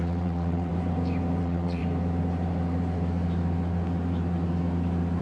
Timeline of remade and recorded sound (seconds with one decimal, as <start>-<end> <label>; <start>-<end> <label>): 0.0-0.7 remade; 0.7-1.4 recorded; 1.4-1.8 remade; 1.8-5.2 recorded